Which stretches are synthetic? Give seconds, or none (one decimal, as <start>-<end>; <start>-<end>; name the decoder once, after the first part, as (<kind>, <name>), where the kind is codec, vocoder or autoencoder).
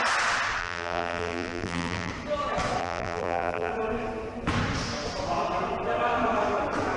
0.6-2.1 (vocoder, BigVGAN v2); 2.8-3.7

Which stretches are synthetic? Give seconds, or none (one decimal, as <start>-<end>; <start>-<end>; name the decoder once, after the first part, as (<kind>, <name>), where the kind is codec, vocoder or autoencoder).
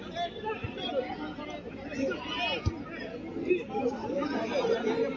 none